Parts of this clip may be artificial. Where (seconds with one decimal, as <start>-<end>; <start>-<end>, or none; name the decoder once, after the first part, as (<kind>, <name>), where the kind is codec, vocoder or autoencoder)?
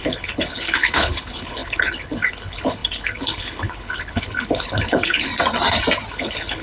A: 0.0-5.3 (codec, HILCodec); 6.1-6.6